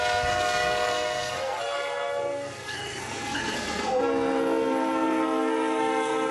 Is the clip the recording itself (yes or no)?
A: no